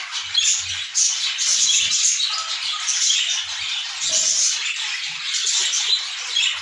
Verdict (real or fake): real